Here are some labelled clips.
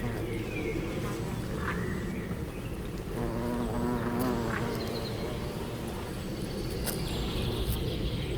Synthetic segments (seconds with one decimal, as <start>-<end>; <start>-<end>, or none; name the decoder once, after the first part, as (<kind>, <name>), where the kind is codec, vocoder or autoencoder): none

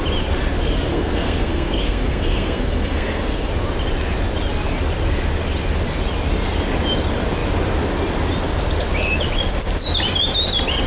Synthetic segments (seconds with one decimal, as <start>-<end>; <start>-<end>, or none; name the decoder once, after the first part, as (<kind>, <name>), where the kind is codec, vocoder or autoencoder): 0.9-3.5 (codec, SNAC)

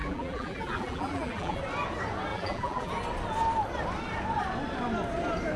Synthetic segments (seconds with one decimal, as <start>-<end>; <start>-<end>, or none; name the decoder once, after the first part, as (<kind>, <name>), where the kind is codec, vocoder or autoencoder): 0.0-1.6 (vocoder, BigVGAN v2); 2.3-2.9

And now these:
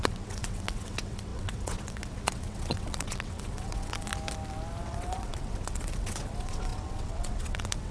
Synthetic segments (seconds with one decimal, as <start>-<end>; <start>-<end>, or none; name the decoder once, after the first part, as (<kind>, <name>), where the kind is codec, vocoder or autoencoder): 0.0-4.1 (vocoder, WaveNeXt); 4.8-7.9

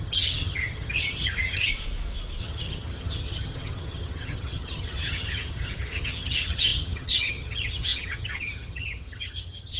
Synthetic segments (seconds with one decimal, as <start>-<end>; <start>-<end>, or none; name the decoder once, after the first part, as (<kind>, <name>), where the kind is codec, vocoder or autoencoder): 0.0-1.7 (vocoder, HiFi-GAN); 2.4-9.8

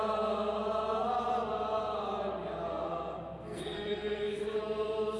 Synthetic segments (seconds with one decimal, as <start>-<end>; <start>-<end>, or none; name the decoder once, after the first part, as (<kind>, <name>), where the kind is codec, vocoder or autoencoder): 2.7-4.6 (codec, SNAC)

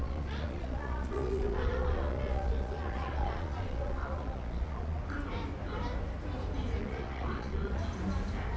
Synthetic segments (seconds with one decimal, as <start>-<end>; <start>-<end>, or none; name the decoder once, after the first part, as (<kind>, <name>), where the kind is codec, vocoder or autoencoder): 0.0-5.0 (vocoder, Vocos); 6.8-7.8

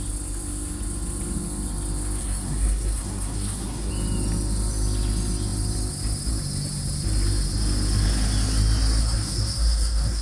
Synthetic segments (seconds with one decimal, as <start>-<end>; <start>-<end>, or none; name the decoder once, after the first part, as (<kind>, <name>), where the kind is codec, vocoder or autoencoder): 2.2-3.9 (codec, SNAC); 9.0-10.2